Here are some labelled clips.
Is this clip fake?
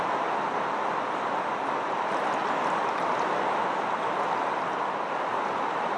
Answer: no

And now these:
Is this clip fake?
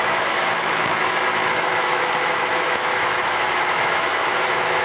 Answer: yes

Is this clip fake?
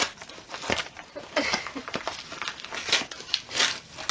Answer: no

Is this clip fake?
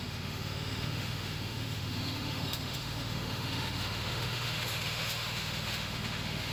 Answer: yes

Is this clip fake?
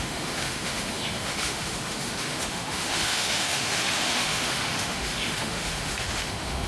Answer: yes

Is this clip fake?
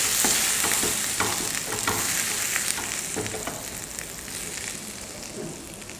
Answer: no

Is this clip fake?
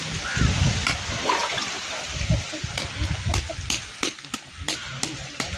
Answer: no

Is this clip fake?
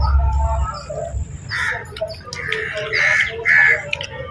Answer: no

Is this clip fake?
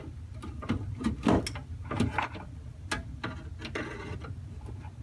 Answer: no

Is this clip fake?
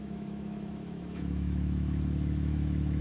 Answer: yes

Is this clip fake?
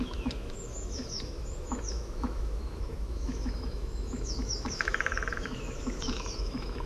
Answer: yes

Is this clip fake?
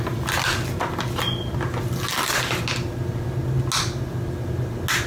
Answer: no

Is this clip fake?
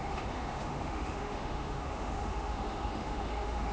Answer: yes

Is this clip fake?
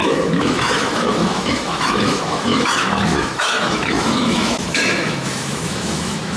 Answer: yes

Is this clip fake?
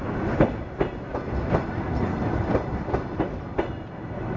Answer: no